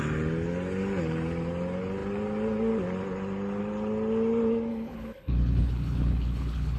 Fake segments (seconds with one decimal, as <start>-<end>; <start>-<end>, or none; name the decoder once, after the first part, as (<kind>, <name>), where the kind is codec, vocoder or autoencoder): 4.7-6.8 (codec, HILCodec)